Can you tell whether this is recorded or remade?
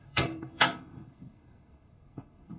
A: remade